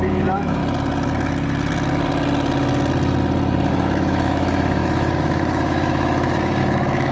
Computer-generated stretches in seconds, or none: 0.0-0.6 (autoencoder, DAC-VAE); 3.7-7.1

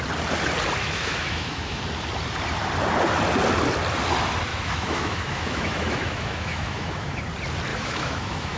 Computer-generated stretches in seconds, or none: 0.8-1.8 (autoencoder, DAC-VAE); 4.5-7.2; 7.7-8.6

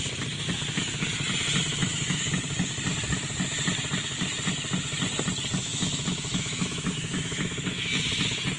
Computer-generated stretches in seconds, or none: 1.8-2.3 (autoencoder, DAC-VAE); 5.6-8.0

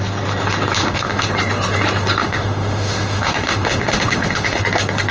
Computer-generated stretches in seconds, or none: 0.8-1.3 (autoencoder, DAC-VAE); 2.2-4.6